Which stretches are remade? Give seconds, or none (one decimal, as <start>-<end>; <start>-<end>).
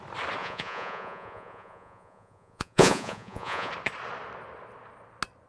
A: 0.4-3.7